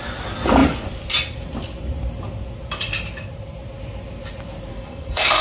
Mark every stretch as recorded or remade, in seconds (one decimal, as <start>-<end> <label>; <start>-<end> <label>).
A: 0.0-4.7 recorded; 4.7-5.4 remade